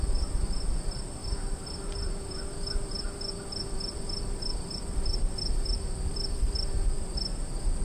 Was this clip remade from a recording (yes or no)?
no